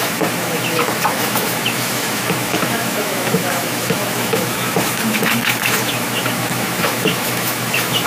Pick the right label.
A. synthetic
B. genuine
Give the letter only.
A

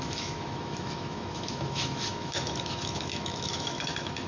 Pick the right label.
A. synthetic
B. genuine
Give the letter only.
A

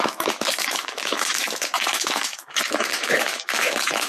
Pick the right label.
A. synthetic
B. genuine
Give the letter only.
A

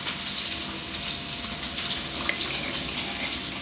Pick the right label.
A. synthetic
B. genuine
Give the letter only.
B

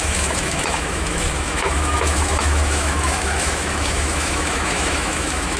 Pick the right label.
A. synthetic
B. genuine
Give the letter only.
A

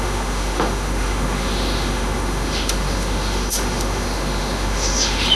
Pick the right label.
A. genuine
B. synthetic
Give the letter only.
B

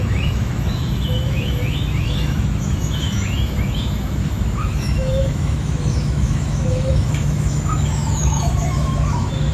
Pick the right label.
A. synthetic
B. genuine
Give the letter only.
A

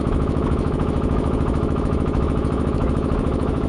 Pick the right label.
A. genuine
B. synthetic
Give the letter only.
B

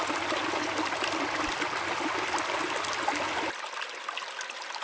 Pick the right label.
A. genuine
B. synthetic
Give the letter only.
A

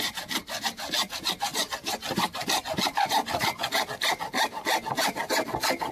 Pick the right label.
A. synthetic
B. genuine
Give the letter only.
B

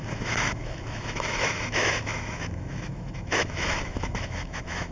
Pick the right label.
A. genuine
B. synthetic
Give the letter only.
B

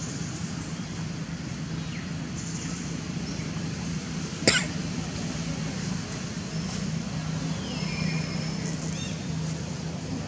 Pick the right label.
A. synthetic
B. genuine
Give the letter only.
B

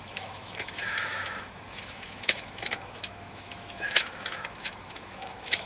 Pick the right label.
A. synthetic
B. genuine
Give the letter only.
A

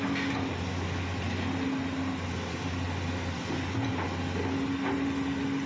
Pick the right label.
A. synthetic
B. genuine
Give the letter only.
B